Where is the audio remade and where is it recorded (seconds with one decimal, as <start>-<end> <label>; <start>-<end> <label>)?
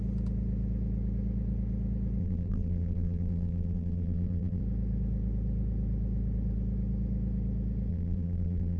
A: 0.0-2.2 recorded; 2.2-4.6 remade; 4.6-7.9 recorded; 7.9-8.8 remade